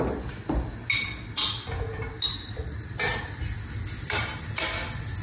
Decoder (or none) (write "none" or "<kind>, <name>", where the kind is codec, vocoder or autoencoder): none